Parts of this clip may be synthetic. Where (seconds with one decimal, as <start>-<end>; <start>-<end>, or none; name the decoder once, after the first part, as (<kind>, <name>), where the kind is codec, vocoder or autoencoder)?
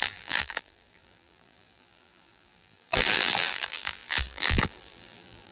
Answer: 0.0-5.5 (vocoder, BigVGAN v2)